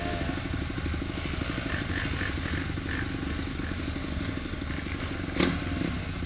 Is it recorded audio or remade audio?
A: recorded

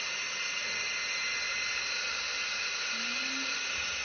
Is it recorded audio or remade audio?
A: recorded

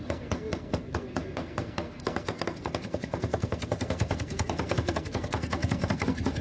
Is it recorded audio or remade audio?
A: remade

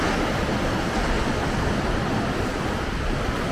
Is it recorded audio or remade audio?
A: recorded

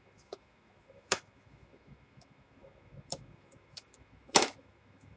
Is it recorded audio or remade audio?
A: remade